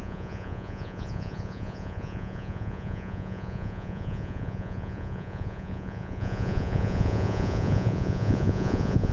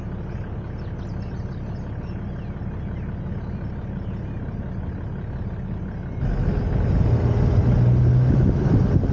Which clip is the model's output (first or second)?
first